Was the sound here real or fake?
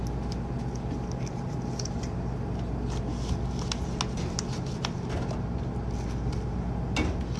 real